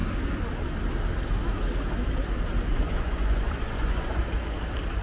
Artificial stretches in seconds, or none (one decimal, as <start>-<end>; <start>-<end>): 2.7-4.2